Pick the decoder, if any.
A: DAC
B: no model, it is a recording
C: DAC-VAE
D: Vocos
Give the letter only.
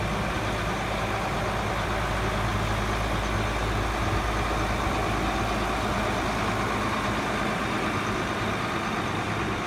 B